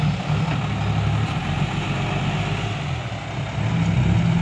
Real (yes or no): yes